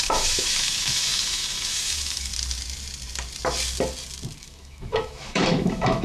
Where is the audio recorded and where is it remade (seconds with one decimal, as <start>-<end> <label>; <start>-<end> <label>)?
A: 0.0-2.3 remade; 2.3-4.4 recorded; 4.4-6.0 remade